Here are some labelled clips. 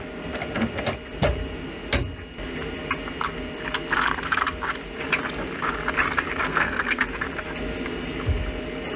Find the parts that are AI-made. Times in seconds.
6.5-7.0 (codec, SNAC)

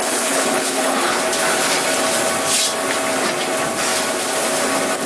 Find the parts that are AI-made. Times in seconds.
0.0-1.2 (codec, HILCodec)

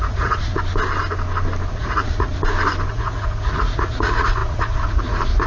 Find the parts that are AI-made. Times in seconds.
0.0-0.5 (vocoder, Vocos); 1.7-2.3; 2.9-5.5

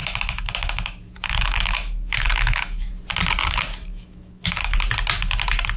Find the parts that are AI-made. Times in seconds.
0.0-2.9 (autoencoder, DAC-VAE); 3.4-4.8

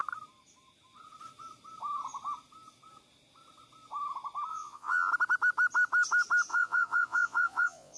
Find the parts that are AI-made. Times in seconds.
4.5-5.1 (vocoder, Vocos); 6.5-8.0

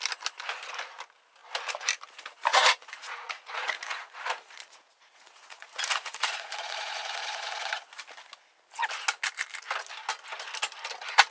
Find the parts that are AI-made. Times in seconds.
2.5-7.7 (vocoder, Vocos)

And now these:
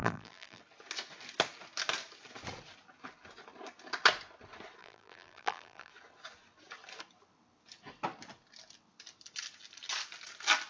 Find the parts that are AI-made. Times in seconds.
0.0-0.6 (vocoder, BigVGAN v2); 4.8-5.9

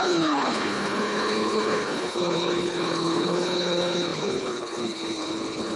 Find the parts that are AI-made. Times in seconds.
0.0-5.8 (codec, HILCodec)